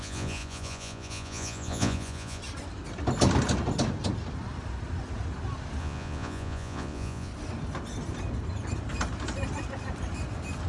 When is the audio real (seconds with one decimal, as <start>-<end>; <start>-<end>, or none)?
2.4-5.8; 7.3-10.7